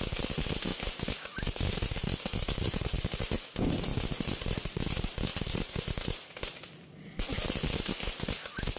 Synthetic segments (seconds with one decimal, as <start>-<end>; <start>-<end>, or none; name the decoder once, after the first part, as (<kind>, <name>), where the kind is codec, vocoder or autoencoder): none